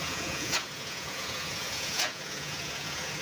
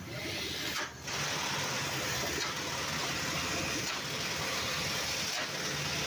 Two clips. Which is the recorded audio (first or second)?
second